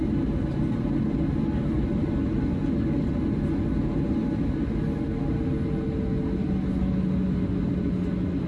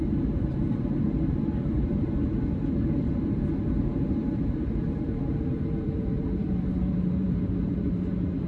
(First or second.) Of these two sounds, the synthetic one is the second